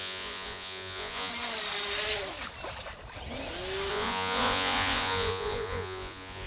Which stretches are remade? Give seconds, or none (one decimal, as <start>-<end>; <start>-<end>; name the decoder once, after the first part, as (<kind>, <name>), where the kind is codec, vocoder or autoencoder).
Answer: 0.0-1.3 (vocoder, Vocos); 3.9-6.5